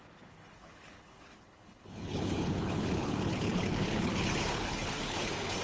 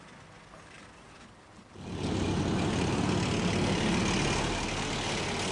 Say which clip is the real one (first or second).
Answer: second